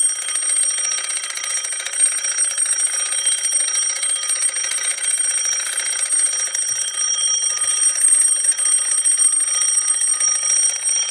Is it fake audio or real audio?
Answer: fake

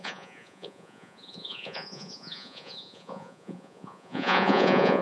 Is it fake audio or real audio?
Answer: fake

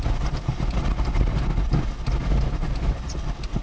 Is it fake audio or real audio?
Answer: real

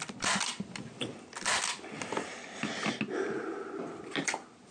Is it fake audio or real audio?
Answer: real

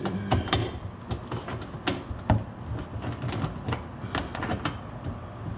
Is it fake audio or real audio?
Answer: real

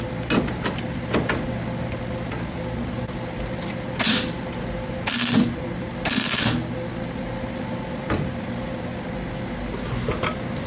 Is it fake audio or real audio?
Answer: real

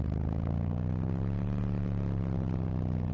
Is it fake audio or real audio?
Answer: real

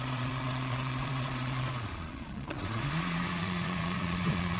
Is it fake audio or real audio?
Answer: fake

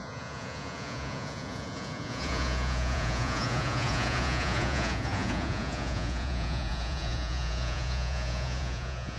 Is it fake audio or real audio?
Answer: fake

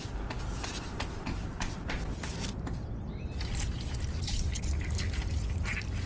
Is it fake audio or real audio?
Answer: real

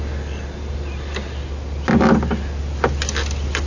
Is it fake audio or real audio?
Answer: real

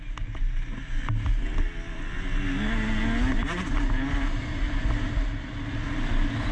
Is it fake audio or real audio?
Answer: real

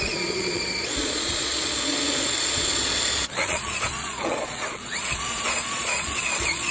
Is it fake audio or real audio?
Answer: fake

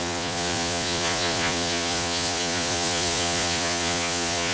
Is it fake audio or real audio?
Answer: fake